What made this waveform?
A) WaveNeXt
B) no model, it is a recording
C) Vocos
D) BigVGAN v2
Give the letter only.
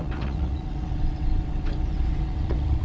A